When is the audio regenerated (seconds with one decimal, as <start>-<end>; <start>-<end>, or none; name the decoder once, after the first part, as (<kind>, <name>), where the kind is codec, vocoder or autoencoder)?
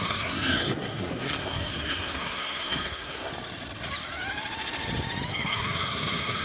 0.0-3.3 (codec, SNAC); 5.3-6.4